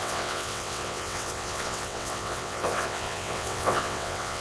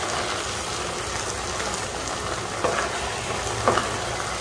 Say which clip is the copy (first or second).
first